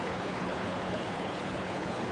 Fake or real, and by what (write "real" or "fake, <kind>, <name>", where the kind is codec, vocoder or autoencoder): fake, codec, HILCodec